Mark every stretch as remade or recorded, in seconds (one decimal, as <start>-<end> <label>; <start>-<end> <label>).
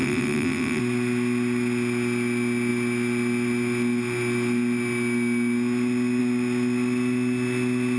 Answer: 0.0-0.8 remade; 0.8-8.0 recorded